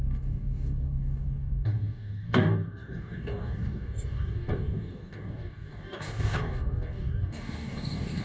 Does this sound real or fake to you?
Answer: fake